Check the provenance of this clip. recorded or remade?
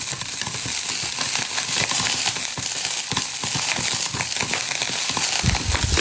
recorded